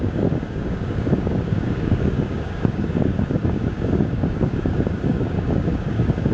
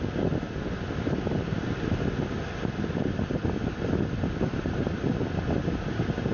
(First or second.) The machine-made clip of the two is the first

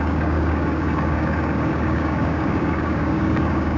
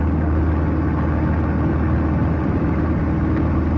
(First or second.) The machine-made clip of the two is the first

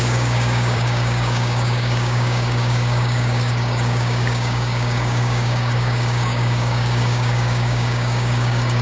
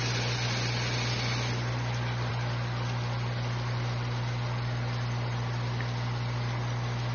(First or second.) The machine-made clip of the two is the first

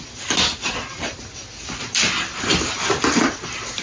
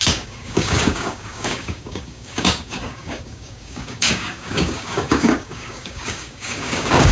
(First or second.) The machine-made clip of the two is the second